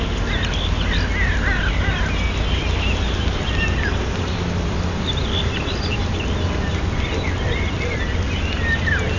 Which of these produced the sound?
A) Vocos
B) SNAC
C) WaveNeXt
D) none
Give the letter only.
D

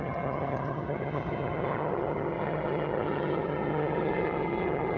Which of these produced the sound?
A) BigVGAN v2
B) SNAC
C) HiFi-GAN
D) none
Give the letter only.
C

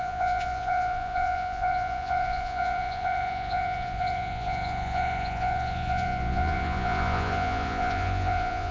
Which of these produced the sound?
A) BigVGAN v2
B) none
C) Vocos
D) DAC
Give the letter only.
C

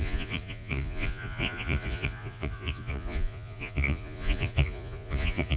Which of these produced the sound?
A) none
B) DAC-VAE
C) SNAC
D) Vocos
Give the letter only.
D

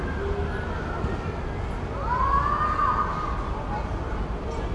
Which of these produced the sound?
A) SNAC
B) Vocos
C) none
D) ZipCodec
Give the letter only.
C